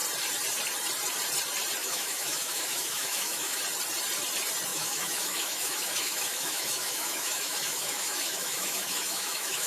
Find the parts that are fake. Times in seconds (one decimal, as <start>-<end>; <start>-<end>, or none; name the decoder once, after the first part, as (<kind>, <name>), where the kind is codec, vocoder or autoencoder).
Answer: 1.8-3.6 (autoencoder, DAC-VAE); 4.7-9.7